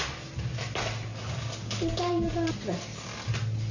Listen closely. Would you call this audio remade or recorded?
recorded